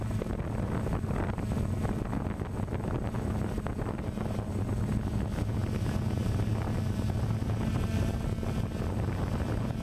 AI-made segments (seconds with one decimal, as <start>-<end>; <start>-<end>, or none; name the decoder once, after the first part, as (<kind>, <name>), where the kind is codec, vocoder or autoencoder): none